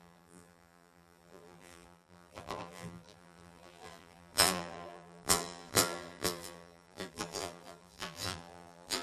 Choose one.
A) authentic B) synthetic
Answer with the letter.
B